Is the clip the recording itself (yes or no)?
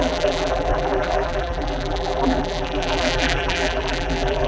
no